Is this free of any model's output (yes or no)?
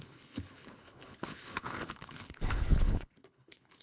no